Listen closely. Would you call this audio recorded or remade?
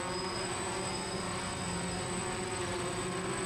recorded